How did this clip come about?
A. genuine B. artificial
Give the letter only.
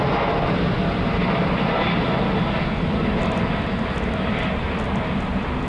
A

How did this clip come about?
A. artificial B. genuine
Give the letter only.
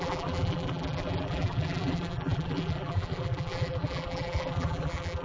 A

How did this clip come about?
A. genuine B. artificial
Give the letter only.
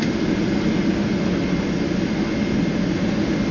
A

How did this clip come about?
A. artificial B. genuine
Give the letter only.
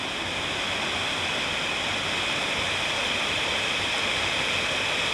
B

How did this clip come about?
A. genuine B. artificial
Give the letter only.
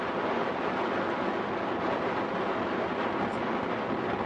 A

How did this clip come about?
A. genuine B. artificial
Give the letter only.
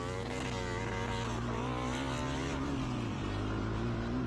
A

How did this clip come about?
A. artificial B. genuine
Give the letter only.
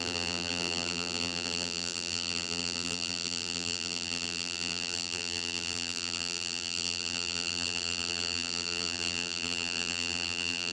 A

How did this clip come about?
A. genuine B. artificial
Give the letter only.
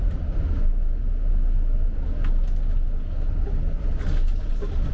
A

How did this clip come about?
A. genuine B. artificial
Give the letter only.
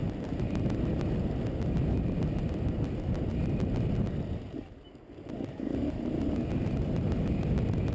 A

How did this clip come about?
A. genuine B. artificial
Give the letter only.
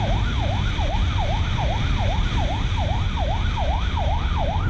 A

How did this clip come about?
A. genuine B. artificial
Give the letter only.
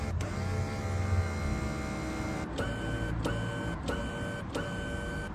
B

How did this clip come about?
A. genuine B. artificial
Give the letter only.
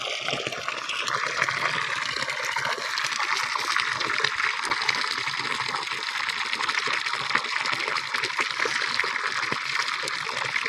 A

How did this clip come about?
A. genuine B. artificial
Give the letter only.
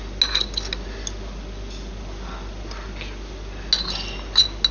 A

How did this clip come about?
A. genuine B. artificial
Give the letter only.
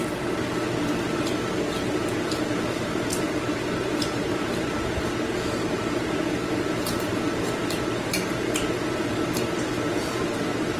B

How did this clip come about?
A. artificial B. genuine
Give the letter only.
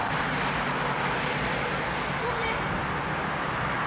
A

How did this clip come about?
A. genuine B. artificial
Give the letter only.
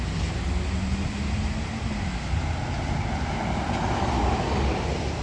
A